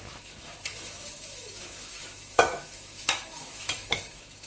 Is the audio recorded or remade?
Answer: remade